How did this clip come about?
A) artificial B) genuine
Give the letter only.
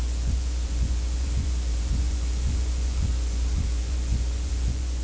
A